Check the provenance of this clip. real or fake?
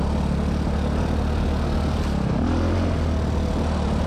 real